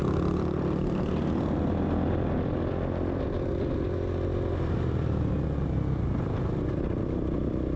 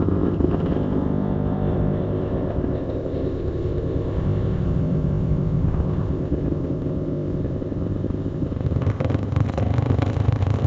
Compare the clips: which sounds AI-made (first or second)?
second